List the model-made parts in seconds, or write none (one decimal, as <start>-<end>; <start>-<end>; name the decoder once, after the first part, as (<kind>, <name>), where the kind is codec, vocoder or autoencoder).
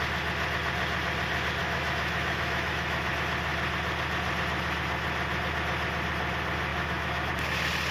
1.6-3.1 (autoencoder, DAC-VAE); 6.7-7.3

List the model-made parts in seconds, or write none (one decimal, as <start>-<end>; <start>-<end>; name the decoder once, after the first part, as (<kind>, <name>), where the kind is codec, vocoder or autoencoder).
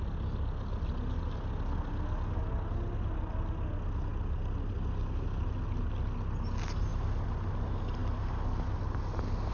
none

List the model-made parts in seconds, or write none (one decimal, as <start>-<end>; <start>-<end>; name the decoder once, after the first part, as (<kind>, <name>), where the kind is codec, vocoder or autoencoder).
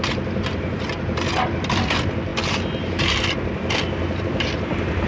none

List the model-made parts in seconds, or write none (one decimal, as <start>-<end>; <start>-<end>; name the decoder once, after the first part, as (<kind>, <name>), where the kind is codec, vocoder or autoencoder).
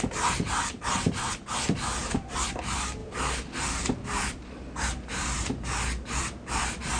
2.0-2.6 (vocoder, BigVGAN v2)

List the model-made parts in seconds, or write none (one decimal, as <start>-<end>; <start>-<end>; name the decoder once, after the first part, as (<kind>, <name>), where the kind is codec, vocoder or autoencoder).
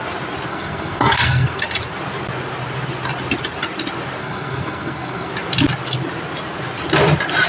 0.5-1.6 (codec, SNAC); 4.2-5.3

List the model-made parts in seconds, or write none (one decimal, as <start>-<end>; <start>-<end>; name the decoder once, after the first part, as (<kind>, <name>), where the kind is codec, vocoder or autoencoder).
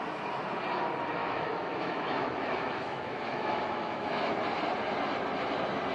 1.2-4.3 (autoencoder, DAC-VAE)